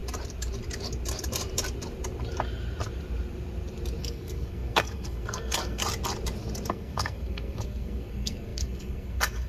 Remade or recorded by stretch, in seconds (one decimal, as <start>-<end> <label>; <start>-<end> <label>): 0.0-4.0 recorded; 4.0-5.8 remade; 5.8-6.7 recorded; 6.7-9.5 remade